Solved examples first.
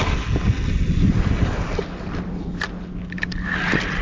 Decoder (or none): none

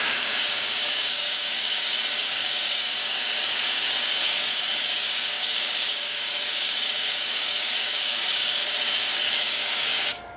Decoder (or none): codec, DAC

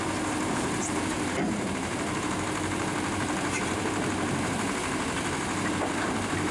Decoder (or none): vocoder, BigVGAN v2